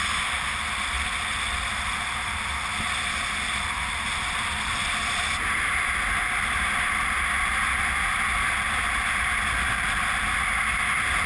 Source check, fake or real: real